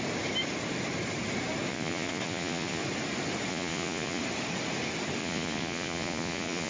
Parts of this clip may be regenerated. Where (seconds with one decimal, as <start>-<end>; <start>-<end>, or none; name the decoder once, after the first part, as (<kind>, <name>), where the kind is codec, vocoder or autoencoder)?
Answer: 1.7-2.8 (vocoder, Vocos); 3.5-4.2; 5.2-6.7